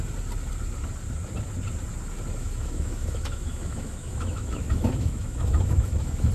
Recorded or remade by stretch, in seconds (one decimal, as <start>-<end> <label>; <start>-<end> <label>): 0.0-2.4 recorded; 2.4-6.3 remade